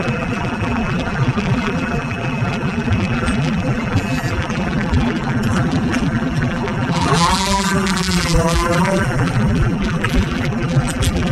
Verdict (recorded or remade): remade